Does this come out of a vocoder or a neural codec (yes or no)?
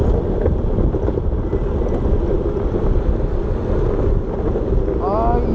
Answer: no